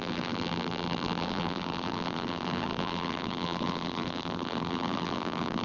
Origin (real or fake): fake